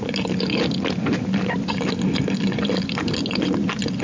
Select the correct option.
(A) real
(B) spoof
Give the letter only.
A